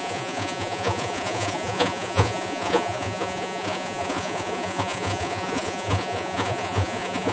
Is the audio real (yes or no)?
no